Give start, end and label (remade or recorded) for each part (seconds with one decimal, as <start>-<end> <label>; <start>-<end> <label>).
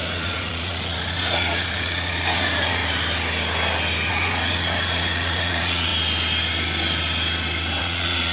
0.0-2.8 remade; 2.8-4.1 recorded; 4.1-5.9 remade; 5.9-7.8 recorded; 7.8-8.3 remade